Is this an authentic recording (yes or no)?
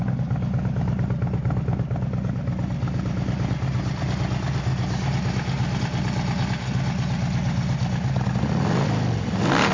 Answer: yes